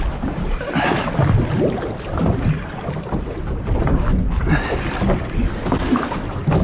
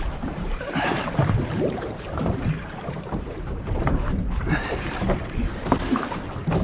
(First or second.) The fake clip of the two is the second